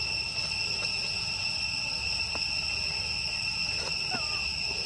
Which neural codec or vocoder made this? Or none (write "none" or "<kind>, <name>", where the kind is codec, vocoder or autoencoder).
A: none